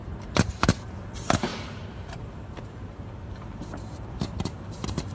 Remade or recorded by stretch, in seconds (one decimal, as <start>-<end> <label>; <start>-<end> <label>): 0.0-5.1 remade